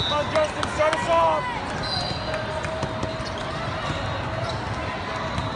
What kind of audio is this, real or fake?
real